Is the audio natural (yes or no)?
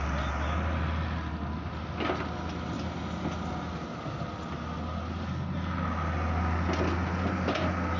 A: yes